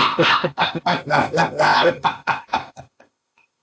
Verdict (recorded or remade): remade